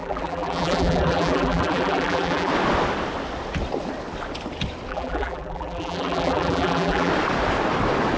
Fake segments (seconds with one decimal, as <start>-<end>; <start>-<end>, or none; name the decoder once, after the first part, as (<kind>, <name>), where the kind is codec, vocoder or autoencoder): 0.0-2.5 (vocoder, BigVGAN v2); 4.9-7.1